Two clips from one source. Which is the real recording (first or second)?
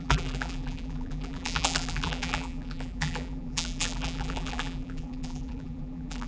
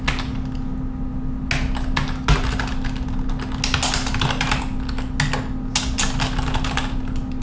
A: second